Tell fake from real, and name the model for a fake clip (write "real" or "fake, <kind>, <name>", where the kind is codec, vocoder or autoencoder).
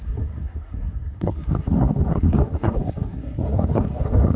fake, codec, SNAC